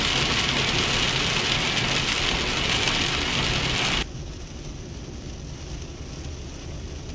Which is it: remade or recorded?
recorded